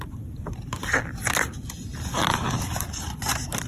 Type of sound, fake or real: fake